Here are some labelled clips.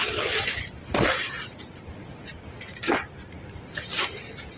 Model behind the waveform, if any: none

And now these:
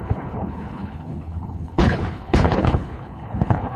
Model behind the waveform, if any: codec, HILCodec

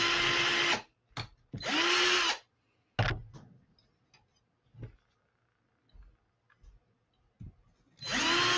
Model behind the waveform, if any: none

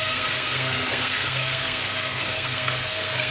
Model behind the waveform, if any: codec, SNAC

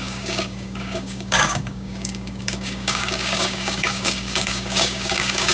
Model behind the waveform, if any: codec, DAC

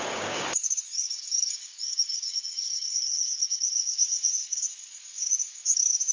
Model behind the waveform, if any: codec, DAC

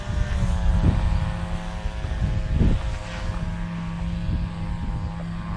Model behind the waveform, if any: none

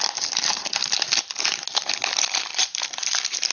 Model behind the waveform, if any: none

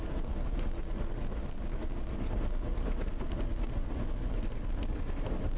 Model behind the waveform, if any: none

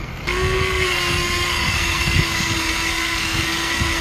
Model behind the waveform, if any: codec, SNAC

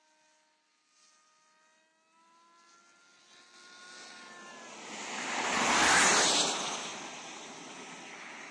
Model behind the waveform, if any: none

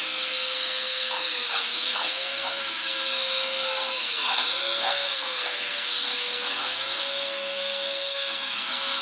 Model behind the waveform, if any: codec, SNAC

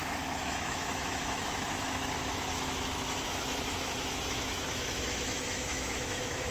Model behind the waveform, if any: autoencoder, DAC-VAE